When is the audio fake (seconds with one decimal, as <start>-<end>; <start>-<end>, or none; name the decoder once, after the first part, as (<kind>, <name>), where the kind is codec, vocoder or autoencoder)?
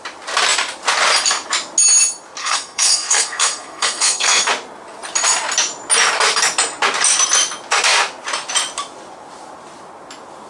2.4-4.5 (codec, SNAC)